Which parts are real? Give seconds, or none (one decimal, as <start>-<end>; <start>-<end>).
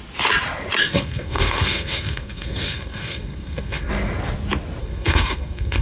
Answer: 0.0-0.8; 3.9-4.8